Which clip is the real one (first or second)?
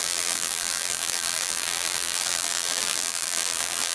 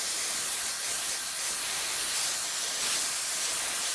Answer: second